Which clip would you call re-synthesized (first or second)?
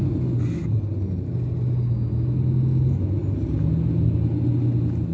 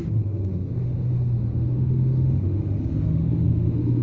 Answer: second